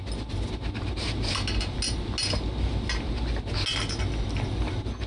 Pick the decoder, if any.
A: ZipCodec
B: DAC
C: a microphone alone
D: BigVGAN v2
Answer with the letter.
C